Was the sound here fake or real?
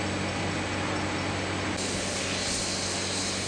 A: real